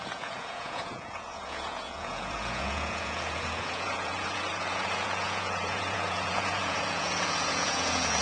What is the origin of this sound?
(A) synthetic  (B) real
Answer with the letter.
A